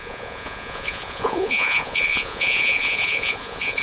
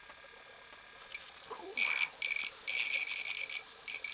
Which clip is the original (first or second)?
second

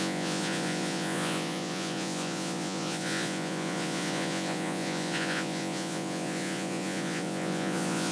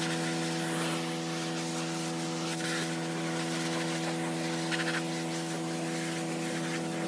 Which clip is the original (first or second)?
second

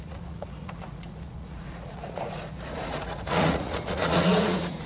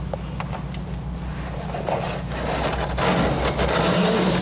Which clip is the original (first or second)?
second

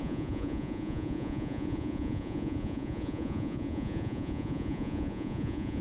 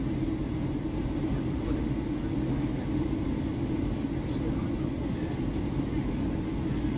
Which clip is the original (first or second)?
second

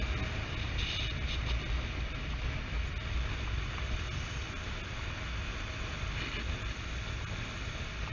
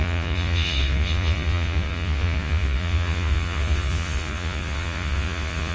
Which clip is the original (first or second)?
first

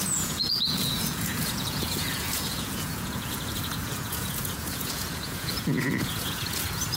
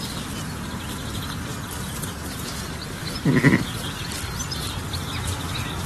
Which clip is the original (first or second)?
second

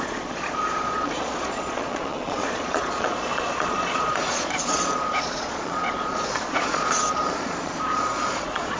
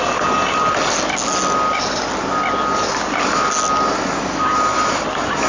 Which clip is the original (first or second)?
second